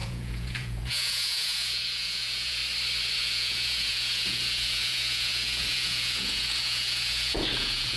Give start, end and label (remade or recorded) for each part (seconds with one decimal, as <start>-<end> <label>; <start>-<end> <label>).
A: 0.0-2.6 remade; 2.6-3.3 recorded; 3.3-8.0 remade